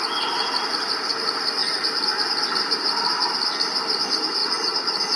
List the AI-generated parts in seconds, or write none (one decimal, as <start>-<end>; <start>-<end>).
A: 4.4-5.2